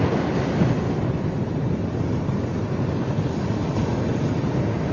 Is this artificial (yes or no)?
no